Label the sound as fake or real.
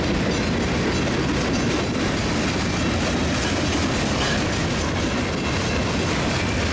real